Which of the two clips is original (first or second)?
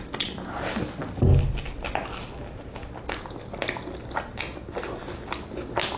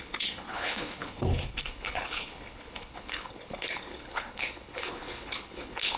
first